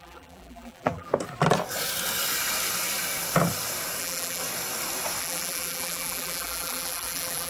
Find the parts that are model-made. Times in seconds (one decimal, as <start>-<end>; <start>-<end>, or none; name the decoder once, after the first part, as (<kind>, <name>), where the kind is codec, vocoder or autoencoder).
0.0-1.1 (vocoder, BigVGAN v2); 4.0-4.4; 5.2-7.5